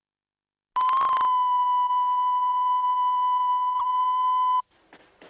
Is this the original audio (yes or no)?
yes